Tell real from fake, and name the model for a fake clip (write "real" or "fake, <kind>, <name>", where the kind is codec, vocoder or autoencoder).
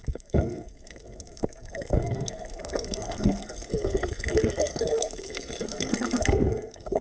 fake, codec, SNAC